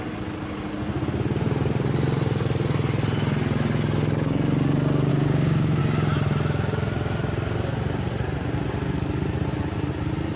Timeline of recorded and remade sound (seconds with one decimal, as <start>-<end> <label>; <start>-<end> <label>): 0.0-5.1 recorded; 5.1-5.8 remade; 5.8-10.4 recorded